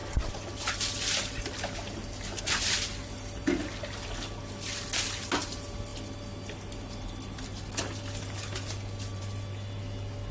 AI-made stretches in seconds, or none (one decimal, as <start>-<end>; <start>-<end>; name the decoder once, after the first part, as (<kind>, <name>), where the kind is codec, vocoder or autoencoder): none